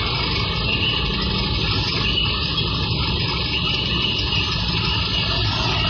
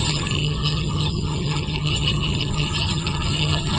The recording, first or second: first